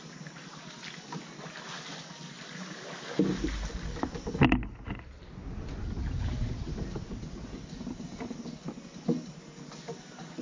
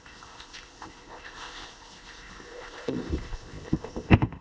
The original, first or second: first